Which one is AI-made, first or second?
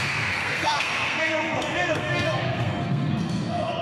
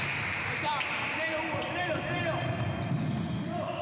first